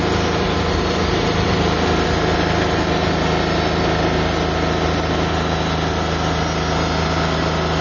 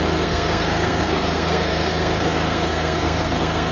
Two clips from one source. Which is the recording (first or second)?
first